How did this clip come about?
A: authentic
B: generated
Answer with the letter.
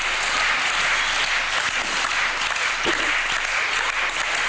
A